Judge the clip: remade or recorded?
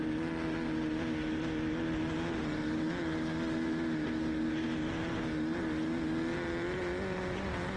recorded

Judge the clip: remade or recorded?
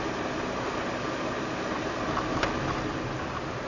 recorded